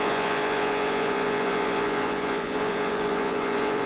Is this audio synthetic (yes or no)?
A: yes